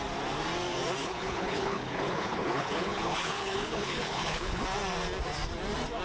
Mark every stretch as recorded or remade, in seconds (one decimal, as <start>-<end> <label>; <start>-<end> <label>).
0.0-1.0 recorded; 1.0-4.6 remade; 4.6-6.0 recorded